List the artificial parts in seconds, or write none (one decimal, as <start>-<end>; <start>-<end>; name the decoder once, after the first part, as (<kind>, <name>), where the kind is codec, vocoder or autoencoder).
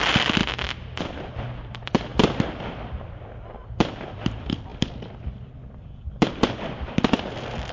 0.0-0.4 (vocoder, BigVGAN v2); 1.0-2.1; 3.7-7.7